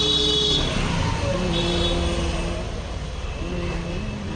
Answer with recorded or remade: recorded